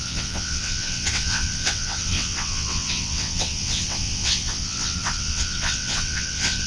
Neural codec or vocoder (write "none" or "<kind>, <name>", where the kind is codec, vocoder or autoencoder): vocoder, WaveNeXt